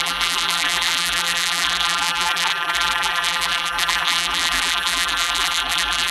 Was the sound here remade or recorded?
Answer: remade